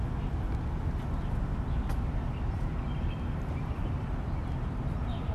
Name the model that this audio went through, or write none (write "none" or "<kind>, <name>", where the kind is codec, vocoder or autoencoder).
none